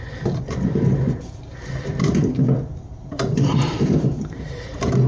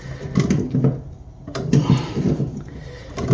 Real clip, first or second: second